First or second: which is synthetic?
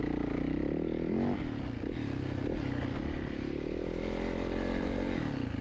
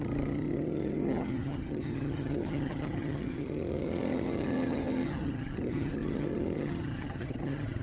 second